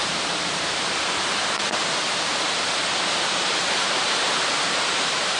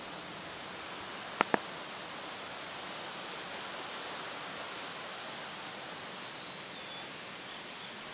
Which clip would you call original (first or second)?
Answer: second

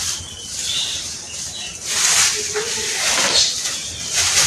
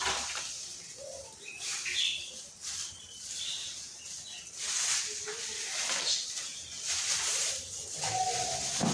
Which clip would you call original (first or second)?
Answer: first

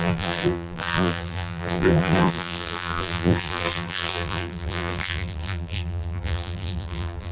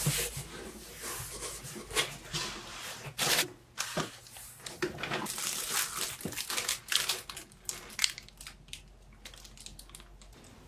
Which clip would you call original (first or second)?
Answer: second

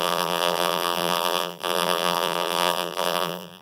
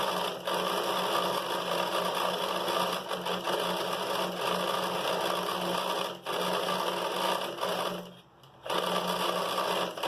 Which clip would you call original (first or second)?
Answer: second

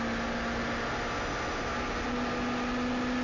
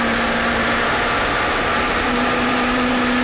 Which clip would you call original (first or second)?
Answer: first